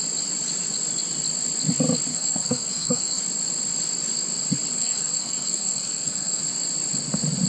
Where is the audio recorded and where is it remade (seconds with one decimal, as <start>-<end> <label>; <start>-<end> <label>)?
0.0-2.1 recorded; 2.1-3.2 remade; 3.2-4.8 recorded; 4.8-6.4 remade; 6.4-7.5 recorded